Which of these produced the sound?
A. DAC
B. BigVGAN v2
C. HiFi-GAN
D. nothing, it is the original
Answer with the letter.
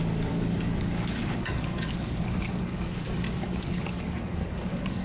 A